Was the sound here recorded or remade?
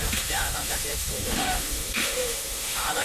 remade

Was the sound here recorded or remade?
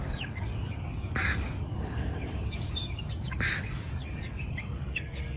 remade